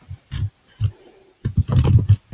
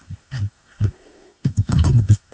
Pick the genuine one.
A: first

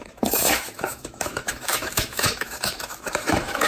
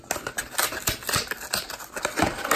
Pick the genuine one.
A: second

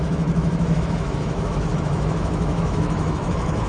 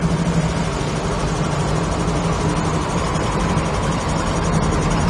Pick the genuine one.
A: second